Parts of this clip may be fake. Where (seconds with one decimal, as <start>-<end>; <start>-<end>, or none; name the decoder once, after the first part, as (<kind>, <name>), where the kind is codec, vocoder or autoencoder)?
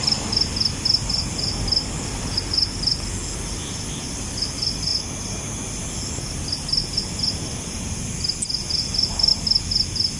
none